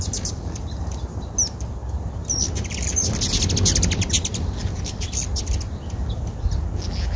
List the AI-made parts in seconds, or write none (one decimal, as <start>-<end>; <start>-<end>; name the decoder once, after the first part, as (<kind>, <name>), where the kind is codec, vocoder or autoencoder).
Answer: none